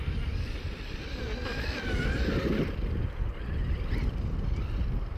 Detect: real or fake real